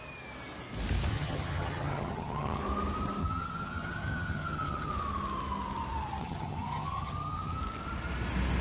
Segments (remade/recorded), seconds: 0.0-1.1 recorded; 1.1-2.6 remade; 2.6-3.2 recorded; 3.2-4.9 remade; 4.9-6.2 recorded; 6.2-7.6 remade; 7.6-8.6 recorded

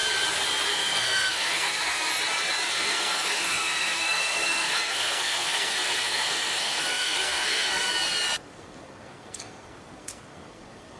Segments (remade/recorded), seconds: 0.0-0.7 recorded; 0.7-2.1 remade; 2.1-2.7 recorded; 2.7-7.9 remade; 7.9-8.4 recorded; 8.4-11.0 remade

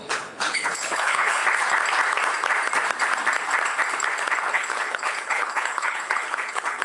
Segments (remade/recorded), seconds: 0.0-1.4 remade; 1.4-4.5 recorded; 4.5-6.8 remade

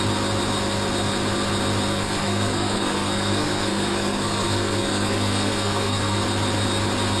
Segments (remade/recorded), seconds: 0.0-1.9 recorded; 1.9-6.2 remade; 6.2-7.2 recorded

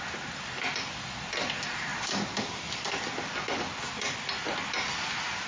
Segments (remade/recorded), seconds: 0.0-5.5 recorded